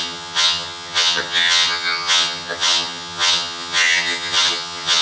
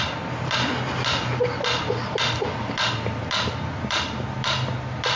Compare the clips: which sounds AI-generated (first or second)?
first